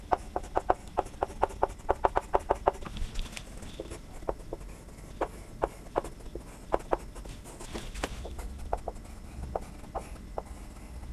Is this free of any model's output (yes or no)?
yes